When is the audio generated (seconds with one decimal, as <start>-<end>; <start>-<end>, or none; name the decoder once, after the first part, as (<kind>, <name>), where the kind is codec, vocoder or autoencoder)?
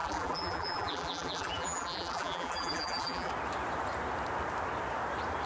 0.0-3.3 (vocoder, BigVGAN v2)